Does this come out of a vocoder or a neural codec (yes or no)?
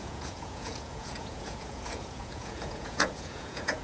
yes